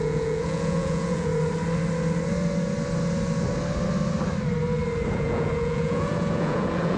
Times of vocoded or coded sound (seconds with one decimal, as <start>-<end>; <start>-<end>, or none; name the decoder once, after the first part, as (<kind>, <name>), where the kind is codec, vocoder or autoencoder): 0.0-1.3 (vocoder, Vocos); 5.1-7.0